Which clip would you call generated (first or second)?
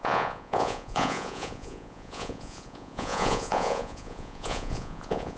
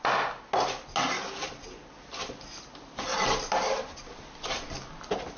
first